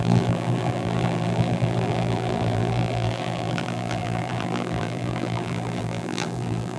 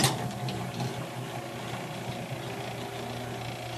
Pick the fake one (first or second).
first